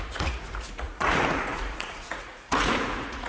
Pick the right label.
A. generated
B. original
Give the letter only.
A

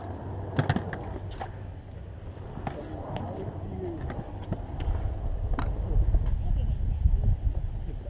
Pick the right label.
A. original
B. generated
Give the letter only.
A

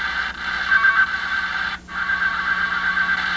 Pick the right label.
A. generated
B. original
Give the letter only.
B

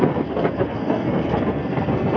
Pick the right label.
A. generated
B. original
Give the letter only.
A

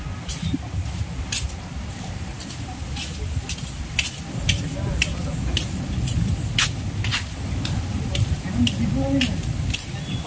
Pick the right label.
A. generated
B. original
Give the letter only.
B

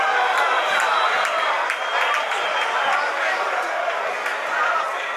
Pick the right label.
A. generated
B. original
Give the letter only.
B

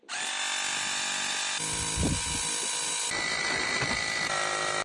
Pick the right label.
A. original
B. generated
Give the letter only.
A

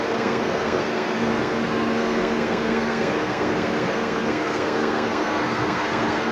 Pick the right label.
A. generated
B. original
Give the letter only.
A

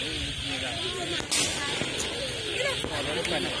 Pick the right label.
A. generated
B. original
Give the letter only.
B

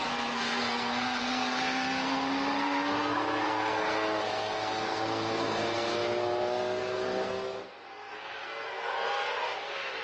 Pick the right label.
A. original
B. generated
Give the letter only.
B